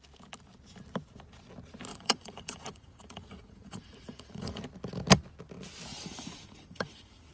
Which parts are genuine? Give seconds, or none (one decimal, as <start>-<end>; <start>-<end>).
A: 0.0-1.9; 4.6-5.9